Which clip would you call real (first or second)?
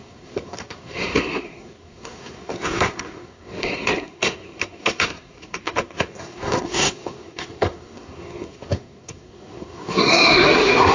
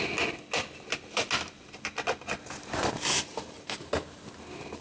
second